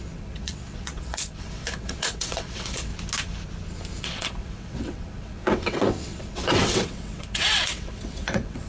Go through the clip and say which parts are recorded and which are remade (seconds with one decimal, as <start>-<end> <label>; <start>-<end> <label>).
0.0-2.9 remade; 2.9-4.0 recorded; 4.0-8.7 remade